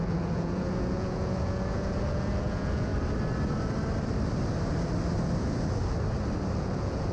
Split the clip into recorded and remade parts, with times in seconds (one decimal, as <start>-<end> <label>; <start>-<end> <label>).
0.0-2.9 remade; 2.9-6.6 recorded; 6.6-7.1 remade